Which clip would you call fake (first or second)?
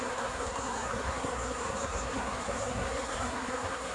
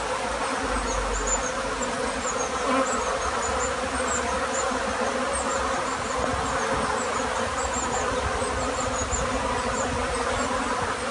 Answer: first